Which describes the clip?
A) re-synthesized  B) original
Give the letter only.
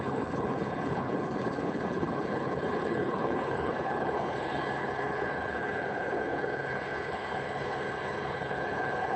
A